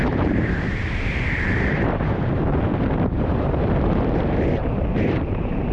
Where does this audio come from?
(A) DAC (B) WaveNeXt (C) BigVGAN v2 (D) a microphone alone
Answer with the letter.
C